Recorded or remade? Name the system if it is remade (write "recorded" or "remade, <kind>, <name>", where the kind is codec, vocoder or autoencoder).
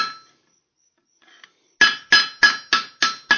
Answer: recorded